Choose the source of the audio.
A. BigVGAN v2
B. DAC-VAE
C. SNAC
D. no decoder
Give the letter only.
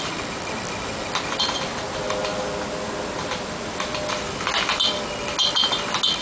D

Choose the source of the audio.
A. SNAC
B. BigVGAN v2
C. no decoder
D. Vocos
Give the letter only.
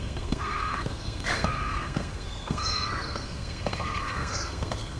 A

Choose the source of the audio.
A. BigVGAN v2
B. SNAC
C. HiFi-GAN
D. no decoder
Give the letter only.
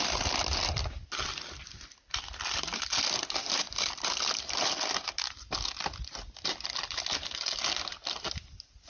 D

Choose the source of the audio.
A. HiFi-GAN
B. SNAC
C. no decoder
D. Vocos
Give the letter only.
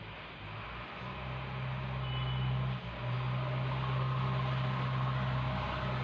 C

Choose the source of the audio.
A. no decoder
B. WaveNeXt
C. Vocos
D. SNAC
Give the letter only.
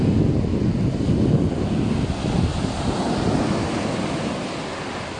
A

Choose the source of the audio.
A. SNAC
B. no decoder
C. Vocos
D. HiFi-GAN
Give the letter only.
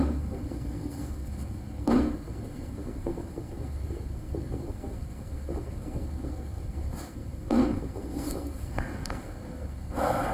A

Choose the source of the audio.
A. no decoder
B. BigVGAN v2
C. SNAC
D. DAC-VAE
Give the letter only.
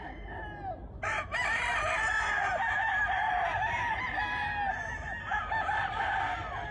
A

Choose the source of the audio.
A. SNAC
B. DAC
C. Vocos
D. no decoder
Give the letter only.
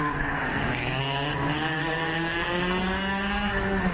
A